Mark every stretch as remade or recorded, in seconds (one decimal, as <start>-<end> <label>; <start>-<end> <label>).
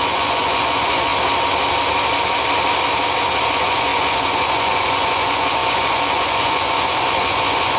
0.0-1.1 remade; 1.1-3.4 recorded; 3.4-7.8 remade